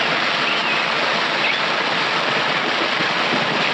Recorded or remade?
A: recorded